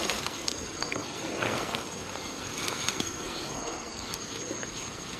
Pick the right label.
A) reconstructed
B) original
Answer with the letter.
A